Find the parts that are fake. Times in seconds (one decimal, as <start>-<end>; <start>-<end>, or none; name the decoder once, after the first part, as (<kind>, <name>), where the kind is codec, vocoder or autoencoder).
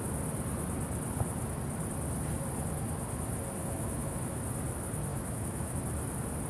3.6-4.4 (autoencoder, DAC-VAE); 5.1-5.8